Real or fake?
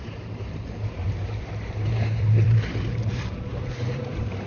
fake